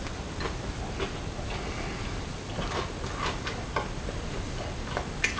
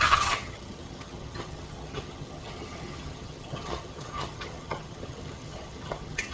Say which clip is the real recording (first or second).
first